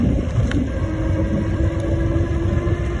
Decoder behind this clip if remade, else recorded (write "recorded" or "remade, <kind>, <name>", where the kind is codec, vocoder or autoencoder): recorded